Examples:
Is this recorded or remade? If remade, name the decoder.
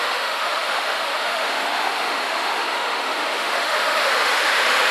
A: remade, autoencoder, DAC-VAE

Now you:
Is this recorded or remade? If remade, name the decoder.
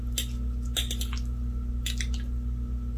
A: recorded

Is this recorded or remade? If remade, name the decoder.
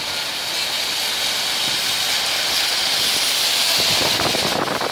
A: recorded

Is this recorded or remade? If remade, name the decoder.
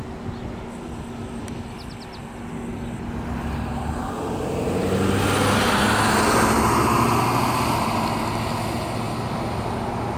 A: recorded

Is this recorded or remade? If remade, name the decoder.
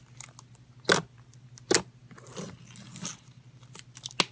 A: recorded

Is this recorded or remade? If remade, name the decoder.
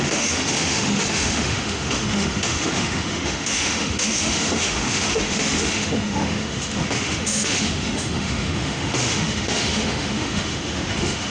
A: remade, autoencoder, DAC-VAE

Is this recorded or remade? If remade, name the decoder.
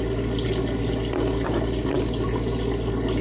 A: recorded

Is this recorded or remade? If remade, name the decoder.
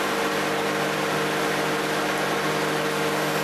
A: recorded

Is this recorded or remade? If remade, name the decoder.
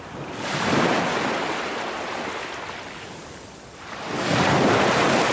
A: recorded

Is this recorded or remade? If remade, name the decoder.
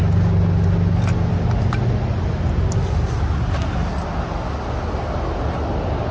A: recorded